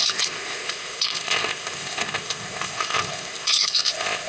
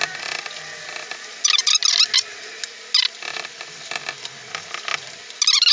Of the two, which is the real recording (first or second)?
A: second